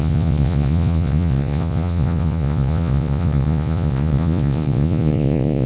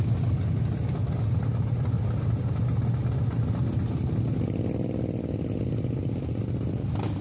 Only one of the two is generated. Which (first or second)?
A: first